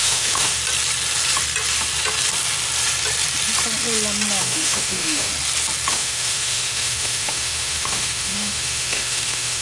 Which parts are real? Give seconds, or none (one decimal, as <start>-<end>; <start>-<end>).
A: 0.6-4.4; 5.3-5.9